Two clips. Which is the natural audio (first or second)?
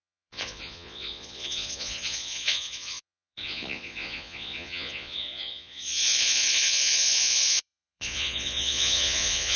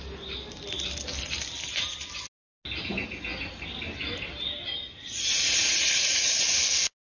second